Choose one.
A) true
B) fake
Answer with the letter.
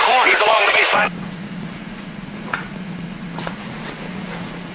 B